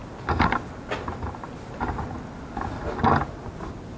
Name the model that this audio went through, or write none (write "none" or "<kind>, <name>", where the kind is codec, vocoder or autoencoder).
none